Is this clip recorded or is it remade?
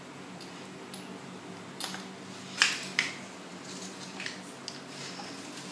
recorded